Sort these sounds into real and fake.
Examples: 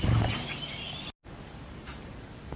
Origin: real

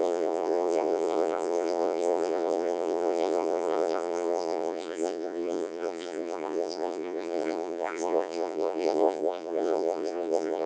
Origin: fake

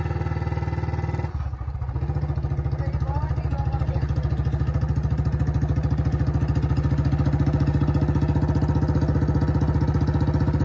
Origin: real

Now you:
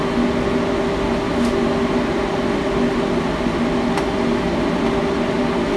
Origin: real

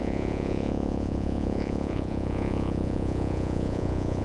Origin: fake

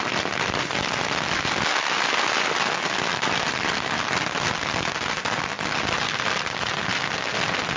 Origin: real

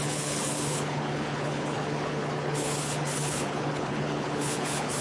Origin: fake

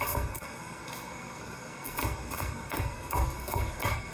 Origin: fake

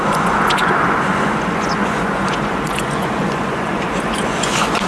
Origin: fake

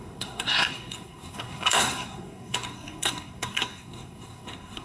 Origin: fake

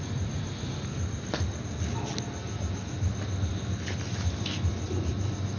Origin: real